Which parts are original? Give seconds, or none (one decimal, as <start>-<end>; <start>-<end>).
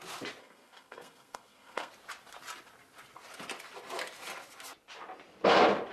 0.0-0.4; 1.9-5.9